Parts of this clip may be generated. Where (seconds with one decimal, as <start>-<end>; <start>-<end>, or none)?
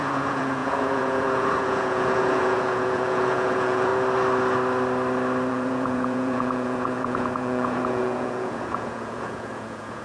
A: 0.0-3.9; 5.5-10.0